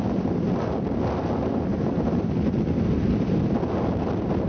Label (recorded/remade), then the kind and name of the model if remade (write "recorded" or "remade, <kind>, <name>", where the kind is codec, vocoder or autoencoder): recorded